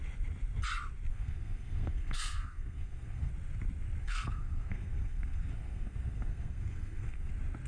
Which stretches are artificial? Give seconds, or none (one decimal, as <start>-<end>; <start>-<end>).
1.1-3.3; 4.0-7.3

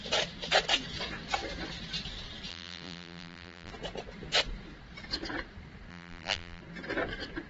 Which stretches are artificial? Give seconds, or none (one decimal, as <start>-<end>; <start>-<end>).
2.5-3.7; 5.9-6.6